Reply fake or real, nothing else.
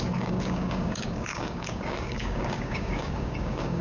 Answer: fake